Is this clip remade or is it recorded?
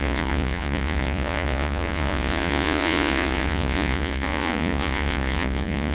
remade